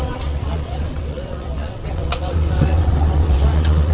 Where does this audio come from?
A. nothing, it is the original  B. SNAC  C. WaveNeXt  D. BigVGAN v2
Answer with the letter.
C